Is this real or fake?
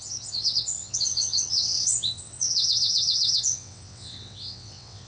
fake